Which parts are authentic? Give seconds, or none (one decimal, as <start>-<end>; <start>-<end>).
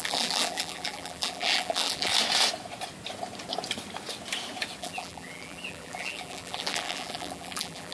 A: 2.1-4.8